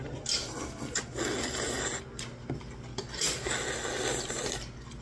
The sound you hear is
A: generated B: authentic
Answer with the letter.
B